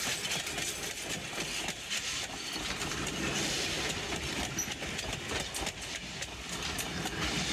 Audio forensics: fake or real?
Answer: real